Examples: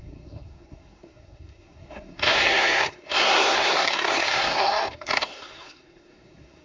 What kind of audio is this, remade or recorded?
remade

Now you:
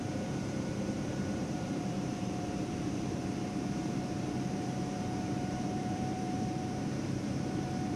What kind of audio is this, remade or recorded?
remade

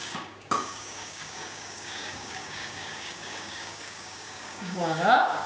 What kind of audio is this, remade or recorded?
remade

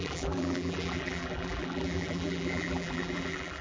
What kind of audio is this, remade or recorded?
remade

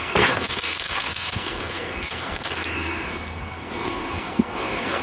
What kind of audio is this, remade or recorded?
remade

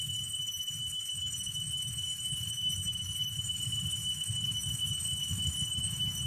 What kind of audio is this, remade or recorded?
remade